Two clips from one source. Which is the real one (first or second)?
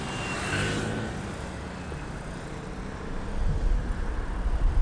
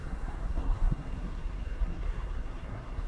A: first